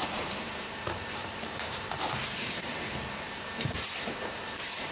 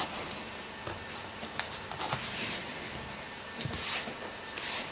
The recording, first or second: second